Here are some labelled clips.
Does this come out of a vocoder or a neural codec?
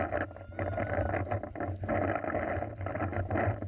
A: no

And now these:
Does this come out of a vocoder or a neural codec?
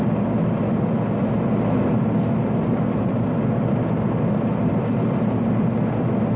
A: no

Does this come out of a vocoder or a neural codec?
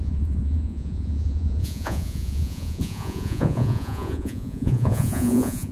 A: yes